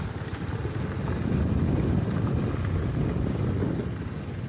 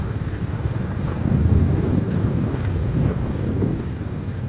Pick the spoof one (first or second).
second